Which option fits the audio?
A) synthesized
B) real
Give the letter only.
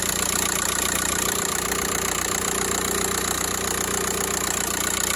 B